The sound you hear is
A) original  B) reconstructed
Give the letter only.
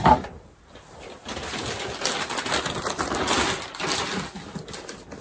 A